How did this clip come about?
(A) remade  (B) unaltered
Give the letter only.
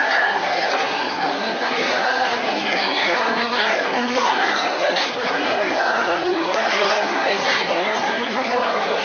A